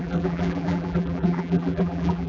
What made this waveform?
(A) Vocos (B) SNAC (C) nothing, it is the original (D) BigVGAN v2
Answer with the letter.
D